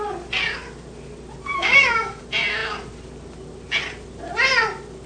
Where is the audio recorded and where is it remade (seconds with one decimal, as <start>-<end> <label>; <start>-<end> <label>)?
0.0-1.5 recorded; 1.5-2.2 remade; 2.2-5.1 recorded

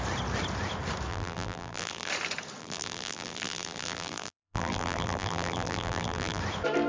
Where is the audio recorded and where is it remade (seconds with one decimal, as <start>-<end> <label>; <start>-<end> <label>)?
0.0-1.1 recorded; 1.1-2.1 remade; 2.1-2.6 recorded; 2.6-6.4 remade; 6.4-6.9 recorded

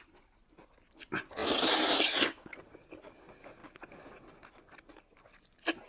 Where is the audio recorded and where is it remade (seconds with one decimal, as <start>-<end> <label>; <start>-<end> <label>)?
0.0-5.9 recorded

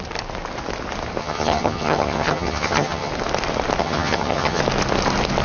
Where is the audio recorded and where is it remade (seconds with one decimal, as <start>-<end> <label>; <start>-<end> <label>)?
0.0-1.2 recorded; 1.2-3.1 remade; 3.1-3.8 recorded; 3.8-4.6 remade; 4.6-5.4 recorded

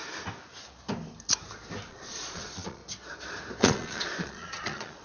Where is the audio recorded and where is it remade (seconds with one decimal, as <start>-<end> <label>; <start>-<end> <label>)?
0.0-1.9 recorded; 1.9-2.8 remade; 2.8-3.6 recorded; 3.6-5.0 remade

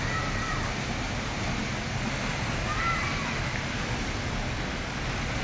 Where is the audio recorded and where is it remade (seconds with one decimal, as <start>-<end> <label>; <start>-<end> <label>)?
0.0-5.4 recorded

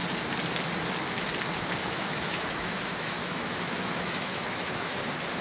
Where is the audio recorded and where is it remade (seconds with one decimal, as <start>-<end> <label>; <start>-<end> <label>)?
0.0-1.8 recorded; 1.8-5.0 remade; 5.0-5.4 recorded

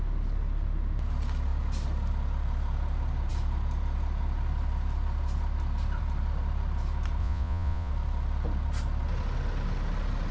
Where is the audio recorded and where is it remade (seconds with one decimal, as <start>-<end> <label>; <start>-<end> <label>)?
0.0-7.2 recorded; 7.2-7.9 remade; 7.9-10.3 recorded